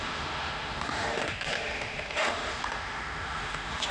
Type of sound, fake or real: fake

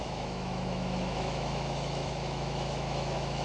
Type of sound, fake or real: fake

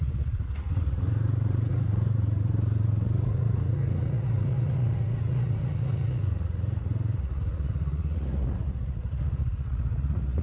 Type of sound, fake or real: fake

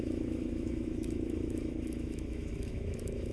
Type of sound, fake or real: fake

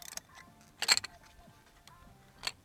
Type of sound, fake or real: real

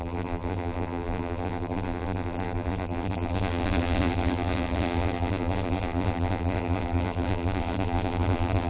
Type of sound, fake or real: fake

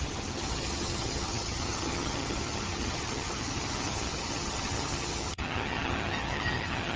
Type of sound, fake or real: fake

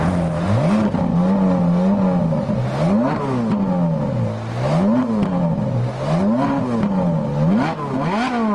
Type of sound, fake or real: real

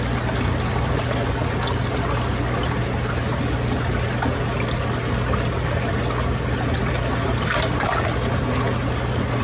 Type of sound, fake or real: real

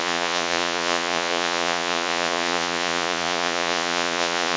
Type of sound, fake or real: fake